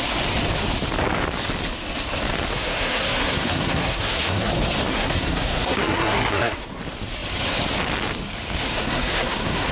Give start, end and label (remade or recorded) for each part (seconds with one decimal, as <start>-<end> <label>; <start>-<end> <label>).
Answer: 0.0-2.5 recorded; 2.5-4.5 remade; 4.5-4.9 recorded; 4.9-6.8 remade; 6.8-8.7 recorded; 8.7-9.7 remade